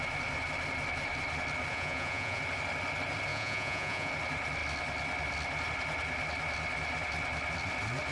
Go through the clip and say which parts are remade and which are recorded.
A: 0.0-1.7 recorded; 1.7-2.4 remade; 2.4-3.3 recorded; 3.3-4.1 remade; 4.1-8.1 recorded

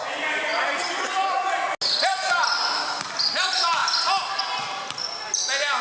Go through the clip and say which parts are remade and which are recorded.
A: 0.0-5.8 recorded

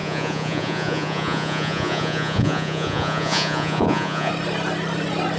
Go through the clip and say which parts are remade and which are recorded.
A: 0.0-4.3 remade; 4.3-5.4 recorded

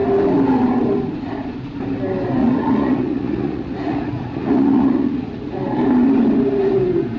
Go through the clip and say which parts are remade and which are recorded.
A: 0.0-2.4 recorded; 2.4-5.6 remade; 5.6-7.2 recorded

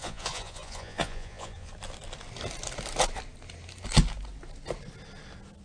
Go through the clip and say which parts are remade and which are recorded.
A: 0.0-1.7 remade; 1.7-5.6 recorded

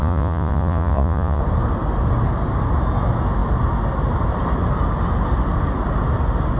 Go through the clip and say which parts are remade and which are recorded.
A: 0.0-1.4 remade; 1.4-6.6 recorded

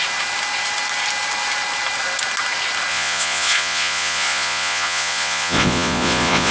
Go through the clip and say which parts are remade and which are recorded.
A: 0.0-2.9 recorded; 2.9-6.5 remade

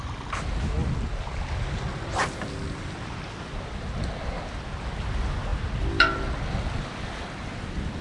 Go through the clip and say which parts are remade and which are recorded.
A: 0.0-8.0 recorded